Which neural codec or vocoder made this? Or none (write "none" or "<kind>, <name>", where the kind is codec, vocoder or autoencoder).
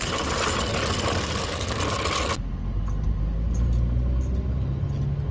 none